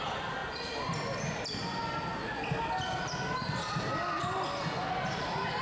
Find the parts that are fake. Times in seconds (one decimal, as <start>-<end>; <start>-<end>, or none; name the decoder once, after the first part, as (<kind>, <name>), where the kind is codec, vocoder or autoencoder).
none